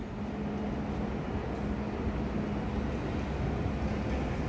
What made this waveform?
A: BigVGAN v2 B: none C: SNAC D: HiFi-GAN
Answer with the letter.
B